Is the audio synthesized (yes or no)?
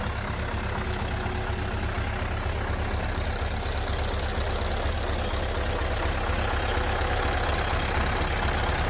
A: no